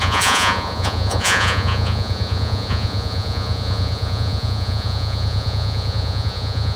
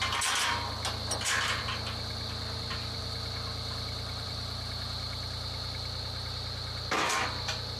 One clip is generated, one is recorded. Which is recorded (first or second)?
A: second